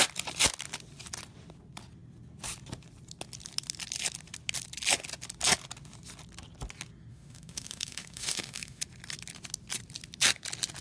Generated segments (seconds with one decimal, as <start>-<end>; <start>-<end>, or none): 7.1-8.8

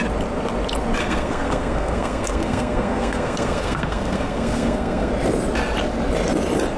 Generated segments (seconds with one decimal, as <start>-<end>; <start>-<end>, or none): 1.0-5.1

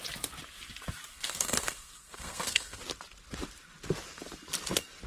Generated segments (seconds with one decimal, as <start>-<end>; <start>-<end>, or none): 1.1-2.8

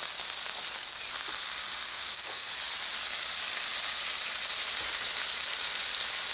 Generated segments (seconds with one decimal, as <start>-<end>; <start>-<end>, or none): 1.9-2.5

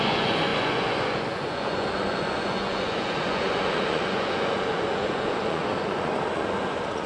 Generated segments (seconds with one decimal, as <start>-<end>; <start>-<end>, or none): 0.0-7.1

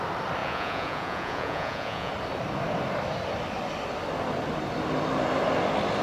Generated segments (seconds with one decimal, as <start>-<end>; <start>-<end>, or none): 0.4-2.1

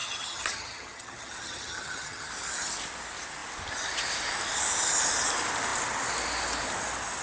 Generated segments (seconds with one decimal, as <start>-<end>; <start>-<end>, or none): 0.0-2.3